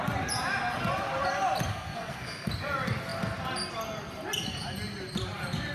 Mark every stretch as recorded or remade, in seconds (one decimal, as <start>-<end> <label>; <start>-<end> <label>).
0.0-1.7 recorded; 1.7-2.5 remade; 2.5-5.7 recorded